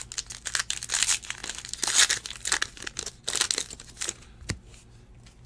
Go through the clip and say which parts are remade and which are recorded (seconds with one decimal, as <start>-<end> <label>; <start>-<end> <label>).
0.0-5.5 recorded